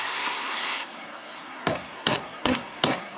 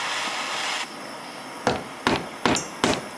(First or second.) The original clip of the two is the second